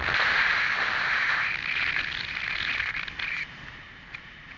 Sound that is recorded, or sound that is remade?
recorded